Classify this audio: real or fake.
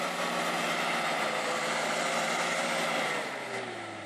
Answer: real